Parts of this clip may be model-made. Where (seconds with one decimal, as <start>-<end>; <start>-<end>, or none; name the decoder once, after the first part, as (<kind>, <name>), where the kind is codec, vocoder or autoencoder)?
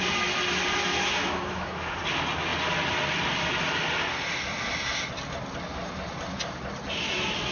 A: 0.9-2.0 (autoencoder, DAC-VAE)